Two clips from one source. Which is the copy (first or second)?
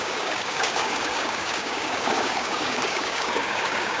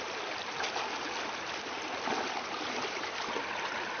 first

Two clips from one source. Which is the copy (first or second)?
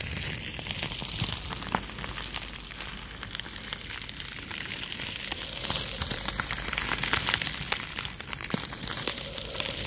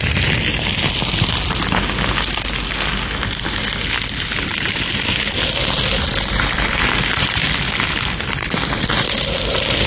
first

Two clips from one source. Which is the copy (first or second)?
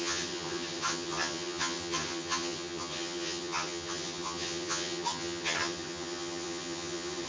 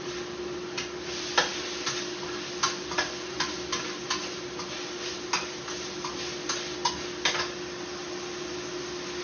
first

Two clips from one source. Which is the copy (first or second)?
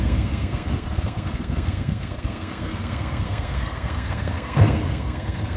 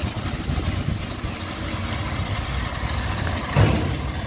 first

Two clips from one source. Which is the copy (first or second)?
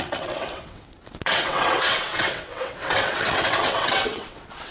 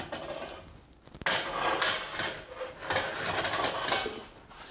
first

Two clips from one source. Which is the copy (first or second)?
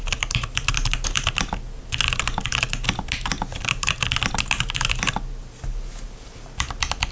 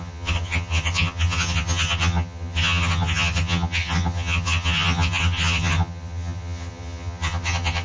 second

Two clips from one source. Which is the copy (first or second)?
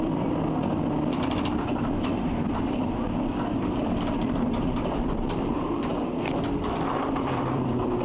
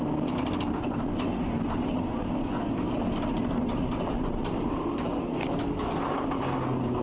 first